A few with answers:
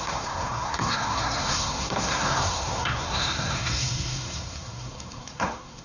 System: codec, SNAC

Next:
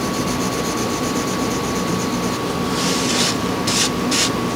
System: none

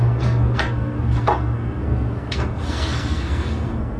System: codec, SNAC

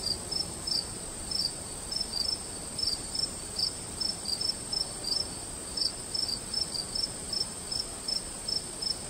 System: vocoder, BigVGAN v2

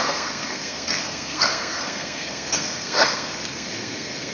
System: codec, SNAC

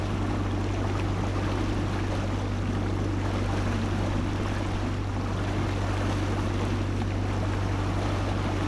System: none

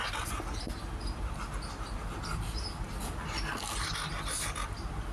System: none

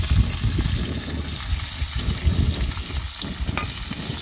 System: none